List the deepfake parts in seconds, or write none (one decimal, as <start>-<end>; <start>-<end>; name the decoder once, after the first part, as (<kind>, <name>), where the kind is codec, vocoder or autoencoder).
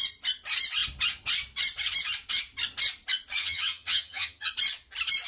3.4-4.5 (vocoder, HiFi-GAN)